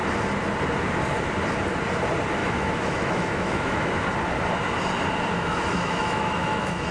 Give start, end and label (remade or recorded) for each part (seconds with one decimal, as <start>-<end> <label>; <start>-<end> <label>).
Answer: 0.0-2.4 recorded; 2.4-3.9 remade; 3.9-5.3 recorded; 5.3-6.9 remade